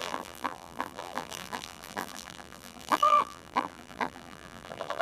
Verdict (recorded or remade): remade